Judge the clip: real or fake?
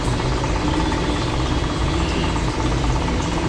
fake